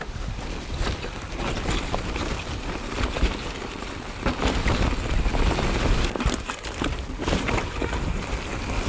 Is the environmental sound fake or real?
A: real